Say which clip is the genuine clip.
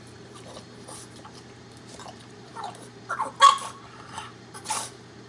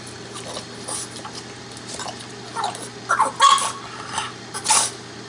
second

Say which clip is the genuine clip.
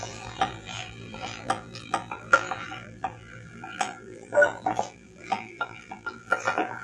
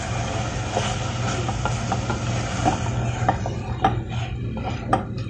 second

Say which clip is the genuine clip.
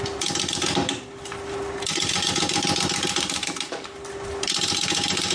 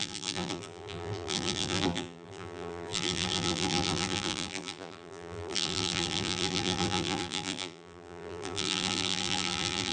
first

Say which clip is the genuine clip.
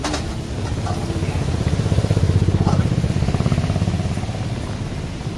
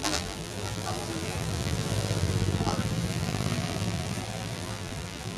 first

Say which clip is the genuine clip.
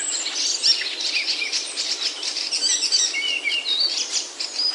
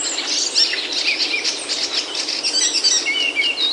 second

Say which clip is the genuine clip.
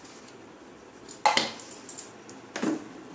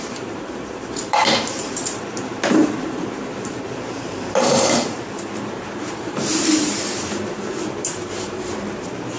first